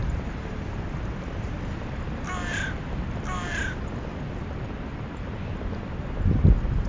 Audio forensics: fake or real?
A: real